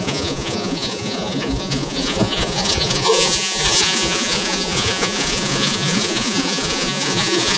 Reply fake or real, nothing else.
fake